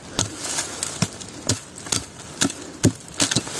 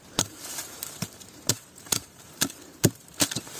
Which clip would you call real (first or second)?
first